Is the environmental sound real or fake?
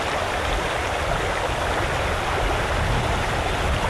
real